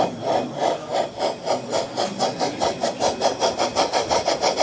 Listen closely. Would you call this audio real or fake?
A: real